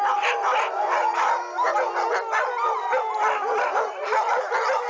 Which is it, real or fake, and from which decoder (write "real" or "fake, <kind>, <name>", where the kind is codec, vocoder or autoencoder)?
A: real